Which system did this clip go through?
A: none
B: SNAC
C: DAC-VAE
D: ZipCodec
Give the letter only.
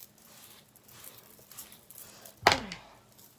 A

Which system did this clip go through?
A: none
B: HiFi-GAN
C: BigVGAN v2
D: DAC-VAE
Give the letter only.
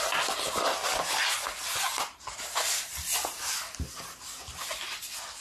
A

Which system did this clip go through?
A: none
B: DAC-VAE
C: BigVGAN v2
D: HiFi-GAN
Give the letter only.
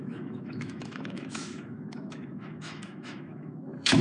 B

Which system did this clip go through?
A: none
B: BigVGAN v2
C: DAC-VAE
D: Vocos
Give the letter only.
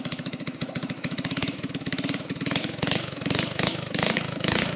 C